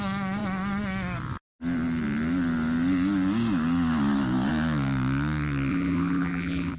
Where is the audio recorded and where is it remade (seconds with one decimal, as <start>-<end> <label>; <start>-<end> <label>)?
0.0-5.7 recorded; 5.7-6.8 remade